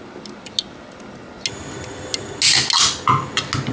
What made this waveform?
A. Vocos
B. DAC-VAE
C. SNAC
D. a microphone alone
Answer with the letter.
D